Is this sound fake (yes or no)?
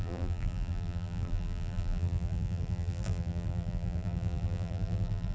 yes